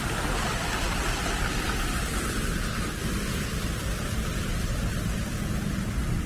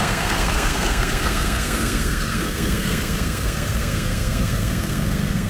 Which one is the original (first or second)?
first